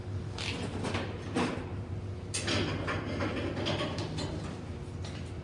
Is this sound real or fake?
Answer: real